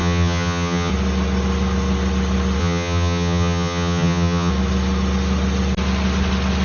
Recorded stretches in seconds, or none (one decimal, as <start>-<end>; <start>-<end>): 0.9-2.6; 4.5-6.6